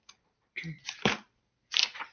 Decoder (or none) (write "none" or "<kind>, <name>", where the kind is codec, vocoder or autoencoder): vocoder, BigVGAN v2